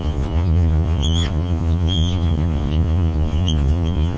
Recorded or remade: remade